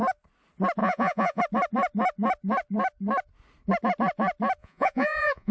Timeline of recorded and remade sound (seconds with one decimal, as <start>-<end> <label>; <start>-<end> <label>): 0.0-0.8 recorded; 0.8-1.4 remade; 1.4-4.6 recorded; 4.6-5.5 remade